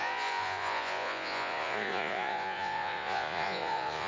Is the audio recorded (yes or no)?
no